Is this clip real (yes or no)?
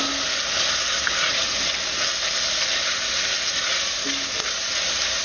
yes